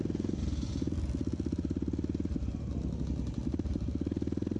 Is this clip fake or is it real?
real